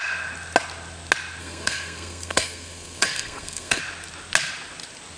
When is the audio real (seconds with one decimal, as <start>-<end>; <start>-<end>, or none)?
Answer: 0.0-1.4; 3.8-5.2